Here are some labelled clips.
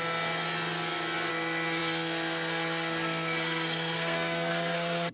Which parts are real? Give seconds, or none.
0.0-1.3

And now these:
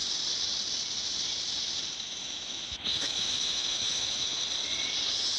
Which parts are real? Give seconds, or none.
0.0-2.2; 4.4-5.4

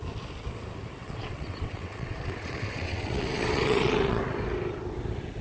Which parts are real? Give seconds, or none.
0.0-1.0; 4.2-5.4

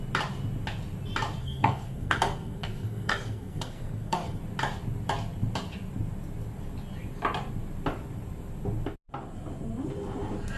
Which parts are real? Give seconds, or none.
0.0-1.4; 4.4-10.6

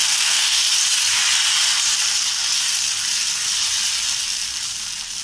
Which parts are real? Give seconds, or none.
0.6-5.2

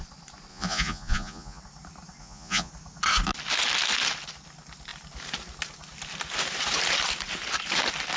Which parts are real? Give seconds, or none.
0.0-0.5; 1.6-2.2; 2.7-8.2

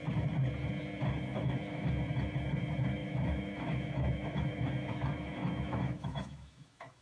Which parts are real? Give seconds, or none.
0.0-1.3; 1.9-3.0

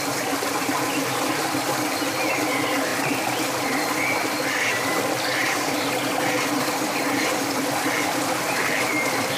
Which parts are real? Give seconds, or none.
0.0-0.6; 2.1-2.9; 7.9-9.4